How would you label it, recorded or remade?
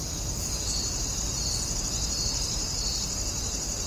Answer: recorded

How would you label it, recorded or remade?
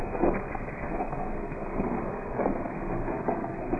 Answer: remade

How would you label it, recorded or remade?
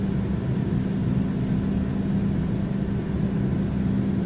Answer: recorded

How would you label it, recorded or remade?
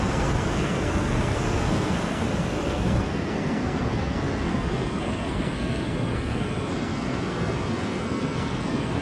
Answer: remade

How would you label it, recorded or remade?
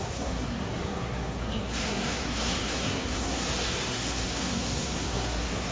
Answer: remade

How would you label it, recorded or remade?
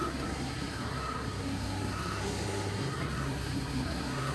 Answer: remade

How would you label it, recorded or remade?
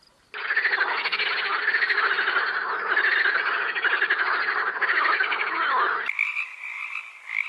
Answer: recorded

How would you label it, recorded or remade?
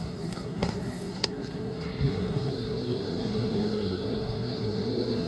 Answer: remade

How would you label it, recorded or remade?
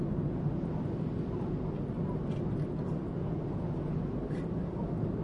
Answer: recorded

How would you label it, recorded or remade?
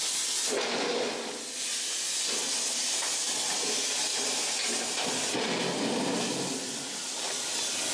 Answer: recorded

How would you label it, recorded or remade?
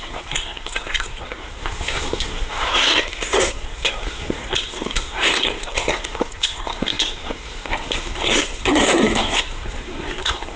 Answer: remade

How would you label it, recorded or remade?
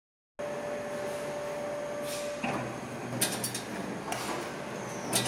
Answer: recorded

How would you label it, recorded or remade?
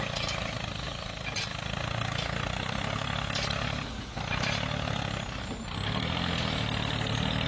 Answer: recorded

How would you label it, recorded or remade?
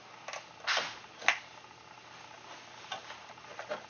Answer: recorded